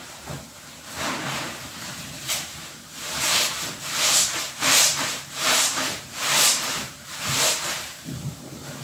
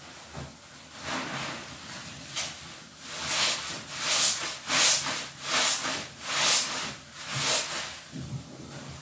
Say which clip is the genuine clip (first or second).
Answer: second